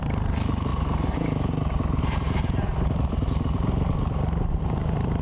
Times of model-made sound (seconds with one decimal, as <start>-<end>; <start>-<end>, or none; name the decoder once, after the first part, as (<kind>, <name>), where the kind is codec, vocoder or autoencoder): 0.0-0.7 (vocoder, BigVGAN v2); 2.0-5.2